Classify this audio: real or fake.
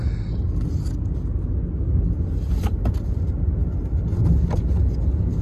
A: real